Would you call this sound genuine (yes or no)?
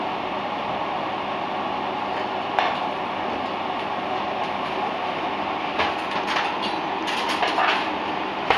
yes